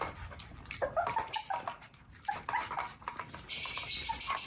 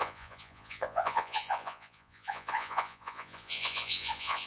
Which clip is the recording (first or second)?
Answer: first